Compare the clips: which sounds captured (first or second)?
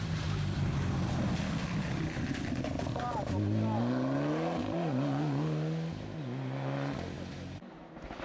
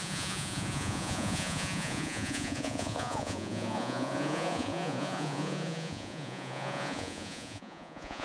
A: first